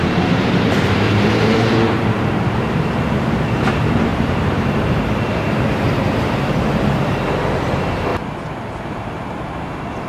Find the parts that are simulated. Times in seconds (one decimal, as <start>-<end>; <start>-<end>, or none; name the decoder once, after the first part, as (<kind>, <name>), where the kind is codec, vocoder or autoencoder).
0.0-8.1 (vocoder, BigVGAN v2); 8.8-10.1